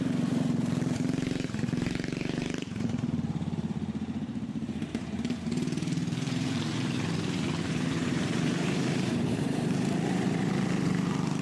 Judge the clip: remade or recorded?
remade